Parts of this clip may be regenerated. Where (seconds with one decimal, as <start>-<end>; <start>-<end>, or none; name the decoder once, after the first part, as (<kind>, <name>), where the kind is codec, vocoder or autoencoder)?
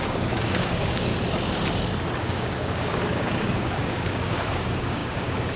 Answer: 0.0-1.1 (codec, DAC); 2.2-5.6